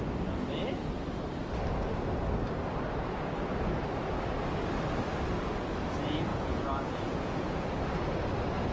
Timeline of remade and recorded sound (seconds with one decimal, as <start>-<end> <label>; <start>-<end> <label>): 0.0-6.3 recorded; 6.3-7.8 remade; 7.8-8.7 recorded